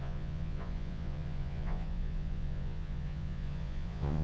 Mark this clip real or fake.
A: fake